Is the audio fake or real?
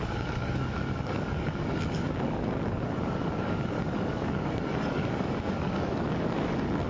fake